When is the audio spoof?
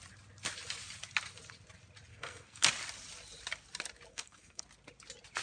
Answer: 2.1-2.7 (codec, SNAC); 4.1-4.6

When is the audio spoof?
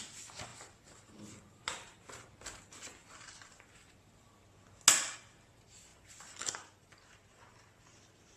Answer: 0.5-1.6 (vocoder, BigVGAN v2); 3.0-4.4; 5.9-7.4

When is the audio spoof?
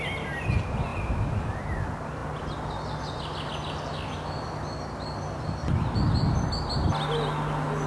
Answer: 0.9-1.6 (vocoder, BigVGAN v2)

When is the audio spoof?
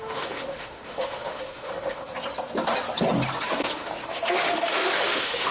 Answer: 0.0-2.0 (autoencoder, DAC-VAE); 3.6-5.5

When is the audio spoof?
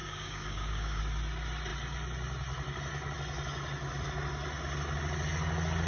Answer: 0.0-1.0 (codec, DAC)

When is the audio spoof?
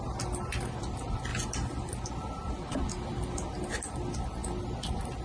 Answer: none